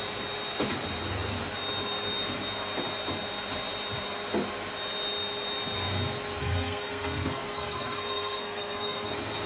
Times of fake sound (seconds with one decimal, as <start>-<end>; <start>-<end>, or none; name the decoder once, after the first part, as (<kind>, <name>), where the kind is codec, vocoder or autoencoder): 6.4-9.1 (codec, SNAC)

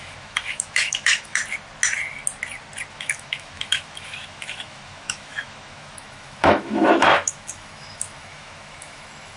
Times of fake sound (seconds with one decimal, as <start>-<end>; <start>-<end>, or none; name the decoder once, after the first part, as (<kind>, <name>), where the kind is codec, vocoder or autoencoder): 0.0-1.4 (autoencoder, DAC-VAE); 2.9-9.4

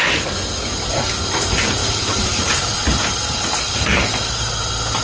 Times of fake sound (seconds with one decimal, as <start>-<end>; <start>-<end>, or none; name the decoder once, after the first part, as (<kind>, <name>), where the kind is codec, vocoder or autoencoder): 1.8-4.5 (vocoder, BigVGAN v2)

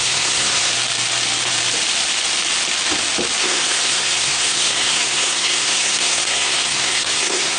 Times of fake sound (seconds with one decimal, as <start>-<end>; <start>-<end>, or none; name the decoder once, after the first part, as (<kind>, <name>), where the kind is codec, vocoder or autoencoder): 0.0-0.7 (codec, SNAC); 3.4-7.6

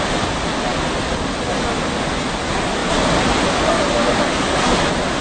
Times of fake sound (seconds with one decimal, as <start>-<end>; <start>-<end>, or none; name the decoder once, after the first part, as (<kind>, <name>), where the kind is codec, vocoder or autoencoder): 4.0-4.6 (codec, DAC)

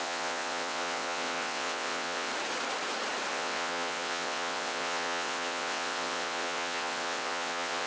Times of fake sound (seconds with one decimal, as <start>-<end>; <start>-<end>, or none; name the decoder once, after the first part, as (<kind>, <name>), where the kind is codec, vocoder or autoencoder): 0.0-2.3 (vocoder, WaveNeXt); 3.3-7.9